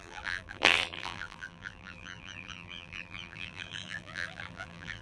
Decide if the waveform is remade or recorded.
remade